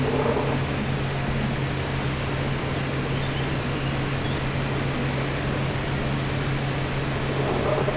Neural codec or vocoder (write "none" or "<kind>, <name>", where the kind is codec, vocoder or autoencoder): none